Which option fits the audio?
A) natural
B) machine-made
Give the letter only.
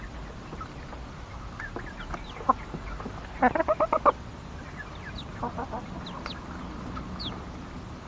A